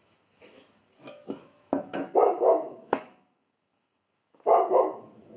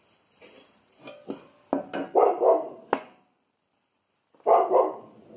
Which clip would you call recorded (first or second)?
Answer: second